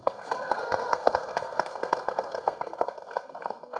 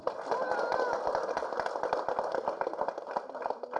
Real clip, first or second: second